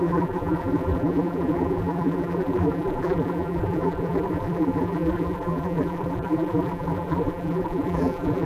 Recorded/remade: remade